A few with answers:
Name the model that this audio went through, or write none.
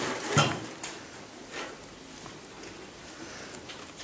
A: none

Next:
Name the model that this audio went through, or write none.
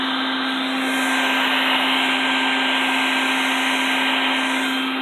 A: none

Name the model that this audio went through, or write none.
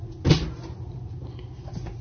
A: none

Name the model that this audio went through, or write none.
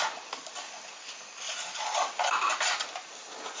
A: none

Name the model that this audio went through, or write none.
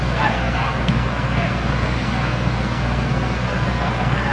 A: codec, SNAC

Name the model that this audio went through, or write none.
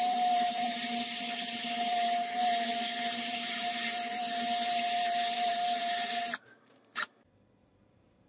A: vocoder, BigVGAN v2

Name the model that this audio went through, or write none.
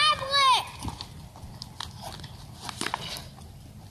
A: none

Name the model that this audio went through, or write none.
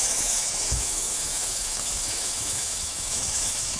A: autoencoder, DAC-VAE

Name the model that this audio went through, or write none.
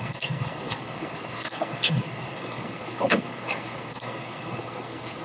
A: codec, SNAC